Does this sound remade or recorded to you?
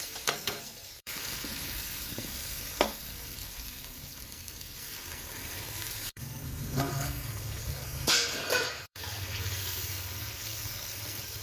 remade